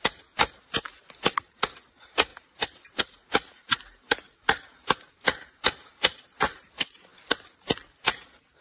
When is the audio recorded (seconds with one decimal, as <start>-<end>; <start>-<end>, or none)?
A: 0.0-8.6